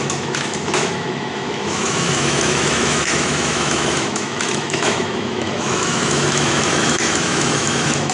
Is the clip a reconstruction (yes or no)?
yes